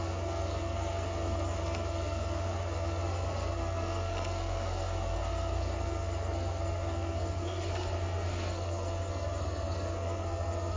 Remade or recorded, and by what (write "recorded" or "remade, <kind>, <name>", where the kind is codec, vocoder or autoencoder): remade, codec, SNAC